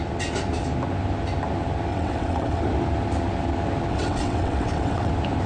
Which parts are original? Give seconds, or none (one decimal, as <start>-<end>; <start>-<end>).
0.0-1.9; 2.6-3.9; 5.1-5.5